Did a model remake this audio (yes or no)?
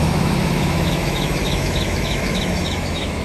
yes